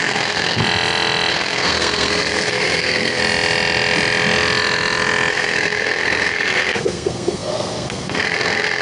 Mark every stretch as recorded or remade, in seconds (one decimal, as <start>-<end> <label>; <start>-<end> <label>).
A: 0.0-0.6 remade; 0.6-1.3 recorded; 1.3-3.2 remade; 3.2-5.3 recorded; 5.3-8.8 remade